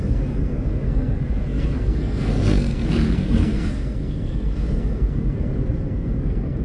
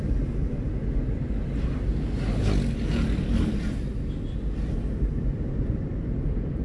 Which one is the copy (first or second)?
first